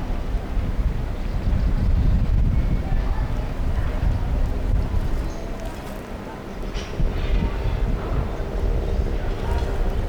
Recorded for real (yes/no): yes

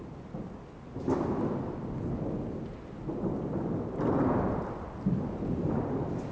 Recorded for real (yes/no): yes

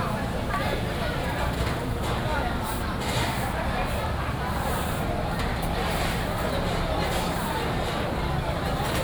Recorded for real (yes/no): yes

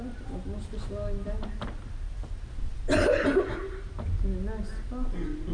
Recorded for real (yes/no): yes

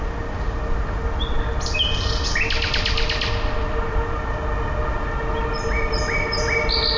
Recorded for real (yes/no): yes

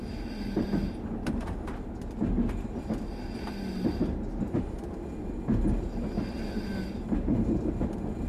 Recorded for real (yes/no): yes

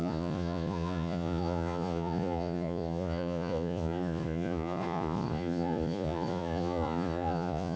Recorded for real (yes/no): no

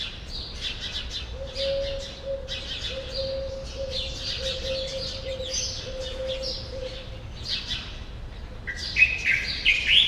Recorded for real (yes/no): yes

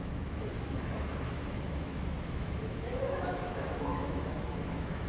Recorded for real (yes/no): no